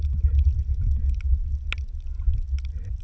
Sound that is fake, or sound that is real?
real